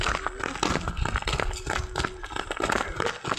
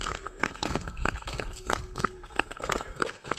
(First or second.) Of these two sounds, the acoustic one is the first